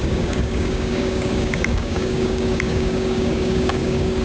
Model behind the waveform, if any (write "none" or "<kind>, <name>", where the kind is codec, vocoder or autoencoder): codec, DAC